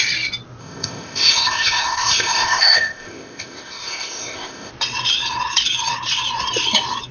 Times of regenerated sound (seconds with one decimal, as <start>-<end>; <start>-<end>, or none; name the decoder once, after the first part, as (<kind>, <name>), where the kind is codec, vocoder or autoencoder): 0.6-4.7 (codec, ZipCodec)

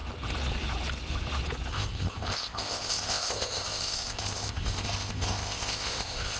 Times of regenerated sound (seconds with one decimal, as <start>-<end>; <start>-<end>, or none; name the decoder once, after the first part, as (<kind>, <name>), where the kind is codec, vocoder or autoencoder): 1.7-6.4 (codec, ZipCodec)

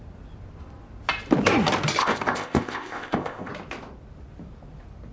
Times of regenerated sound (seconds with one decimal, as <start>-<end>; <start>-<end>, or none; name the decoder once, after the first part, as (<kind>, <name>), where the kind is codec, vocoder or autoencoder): 2.0-3.5 (codec, ZipCodec)

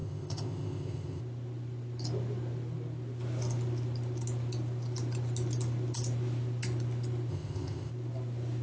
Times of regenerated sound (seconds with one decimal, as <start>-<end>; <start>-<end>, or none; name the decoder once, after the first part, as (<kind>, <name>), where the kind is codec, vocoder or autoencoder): 0.0-1.2 (codec, ZipCodec); 7.3-7.9